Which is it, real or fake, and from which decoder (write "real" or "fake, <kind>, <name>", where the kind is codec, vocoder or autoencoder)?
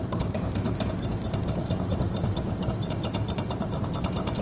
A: fake, vocoder, BigVGAN v2